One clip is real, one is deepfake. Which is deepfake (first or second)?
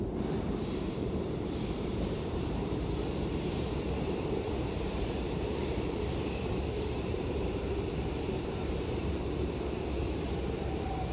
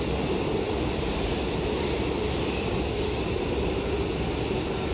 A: first